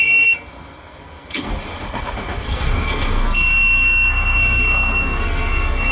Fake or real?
fake